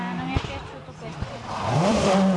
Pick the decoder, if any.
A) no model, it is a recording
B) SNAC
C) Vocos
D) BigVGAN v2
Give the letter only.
D